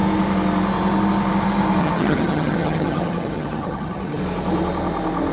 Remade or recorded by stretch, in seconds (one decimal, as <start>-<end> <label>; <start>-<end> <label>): 0.0-1.8 recorded; 1.8-4.2 remade; 4.2-5.3 recorded